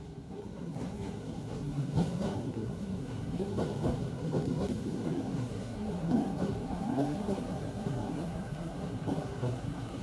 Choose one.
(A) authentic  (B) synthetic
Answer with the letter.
B